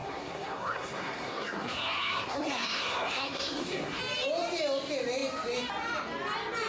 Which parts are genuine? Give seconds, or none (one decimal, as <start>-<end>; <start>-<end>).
4.0-6.7